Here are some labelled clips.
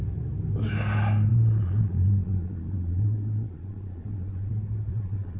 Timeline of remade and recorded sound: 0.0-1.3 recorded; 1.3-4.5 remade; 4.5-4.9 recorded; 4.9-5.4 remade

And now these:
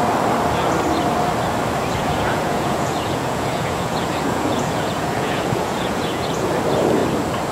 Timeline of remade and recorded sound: 0.0-2.0 recorded; 2.0-6.5 remade; 6.5-7.5 recorded

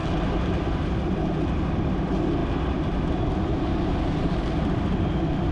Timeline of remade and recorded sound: 0.0-5.5 recorded

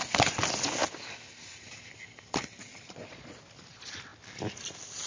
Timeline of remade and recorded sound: 0.0-2.7 recorded; 2.7-3.3 remade; 3.3-5.1 recorded

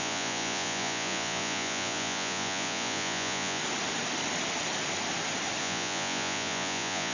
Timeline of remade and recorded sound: 0.0-3.6 remade; 3.6-5.6 recorded; 5.6-7.1 remade

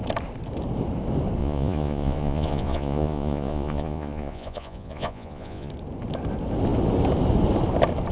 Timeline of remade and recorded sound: 0.0-1.4 recorded; 1.4-5.7 remade; 5.7-8.1 recorded

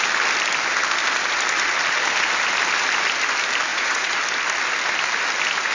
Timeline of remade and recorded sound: 0.0-3.7 recorded; 3.7-4.2 remade; 4.2-5.7 recorded